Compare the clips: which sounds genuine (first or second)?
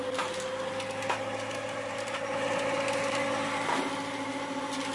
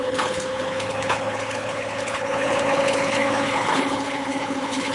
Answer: first